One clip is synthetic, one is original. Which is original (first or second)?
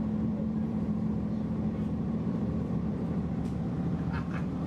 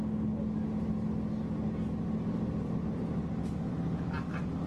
second